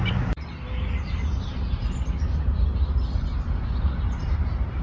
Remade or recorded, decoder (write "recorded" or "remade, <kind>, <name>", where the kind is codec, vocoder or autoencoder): remade, vocoder, BigVGAN v2